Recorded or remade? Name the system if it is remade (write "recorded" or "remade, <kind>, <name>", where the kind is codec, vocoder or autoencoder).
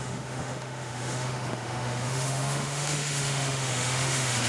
remade, autoencoder, DAC-VAE